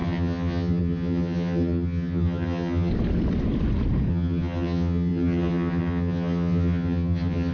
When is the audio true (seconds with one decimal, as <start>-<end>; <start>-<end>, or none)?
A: 2.9-4.1